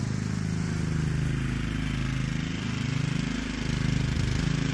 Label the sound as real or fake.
real